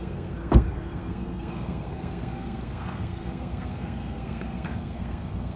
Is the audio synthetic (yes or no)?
yes